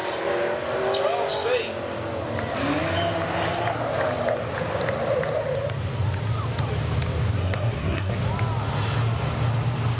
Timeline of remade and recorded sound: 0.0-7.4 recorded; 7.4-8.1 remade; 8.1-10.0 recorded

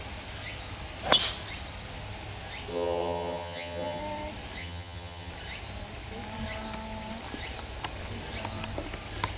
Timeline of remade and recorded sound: 0.0-2.7 recorded; 2.7-4.0 remade; 4.0-4.6 recorded; 4.6-5.3 remade; 5.3-9.4 recorded